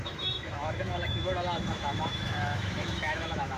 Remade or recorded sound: remade